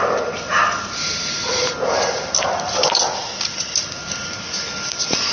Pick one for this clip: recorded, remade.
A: recorded